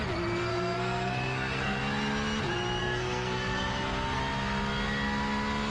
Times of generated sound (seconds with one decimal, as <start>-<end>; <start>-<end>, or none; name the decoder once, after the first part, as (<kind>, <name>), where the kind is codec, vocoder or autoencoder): 0.5-1.8 (codec, SNAC); 2.8-4.2

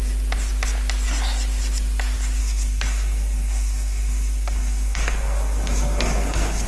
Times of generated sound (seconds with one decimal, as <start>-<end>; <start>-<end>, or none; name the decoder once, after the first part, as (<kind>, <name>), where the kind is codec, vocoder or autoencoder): 2.4-6.7 (codec, SNAC)

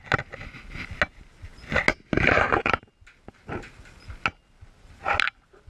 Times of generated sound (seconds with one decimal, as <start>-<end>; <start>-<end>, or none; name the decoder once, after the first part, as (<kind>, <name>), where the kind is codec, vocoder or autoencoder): none

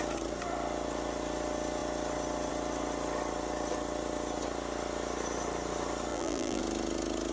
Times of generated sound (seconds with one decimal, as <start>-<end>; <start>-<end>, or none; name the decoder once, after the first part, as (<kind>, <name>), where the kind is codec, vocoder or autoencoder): 6.1-6.6 (vocoder, BigVGAN v2)

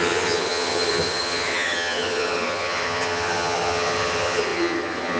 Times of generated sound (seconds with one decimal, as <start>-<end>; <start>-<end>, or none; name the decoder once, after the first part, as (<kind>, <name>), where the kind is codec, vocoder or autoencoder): 0.0-5.2 (vocoder, HiFi-GAN)

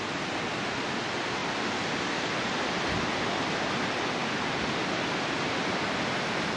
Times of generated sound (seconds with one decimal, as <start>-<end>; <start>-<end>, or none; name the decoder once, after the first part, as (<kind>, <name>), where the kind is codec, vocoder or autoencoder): none

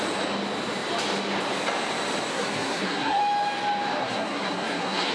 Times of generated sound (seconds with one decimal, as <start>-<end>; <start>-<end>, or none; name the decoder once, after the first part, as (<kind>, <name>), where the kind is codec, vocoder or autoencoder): 2.3-3.2 (codec, SNAC); 4.0-5.1

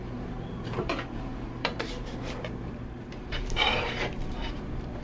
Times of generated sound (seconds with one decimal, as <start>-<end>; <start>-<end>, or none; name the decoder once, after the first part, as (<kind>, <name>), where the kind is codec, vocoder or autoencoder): 0.0-5.0 (vocoder, BigVGAN v2)